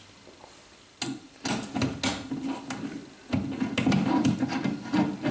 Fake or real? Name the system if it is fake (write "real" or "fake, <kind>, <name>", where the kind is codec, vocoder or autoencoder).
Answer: real